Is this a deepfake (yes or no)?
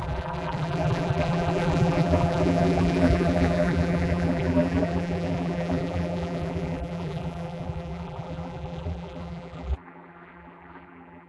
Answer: yes